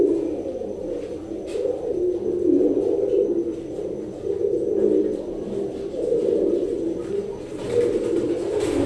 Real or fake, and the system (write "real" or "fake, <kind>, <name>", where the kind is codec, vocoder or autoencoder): real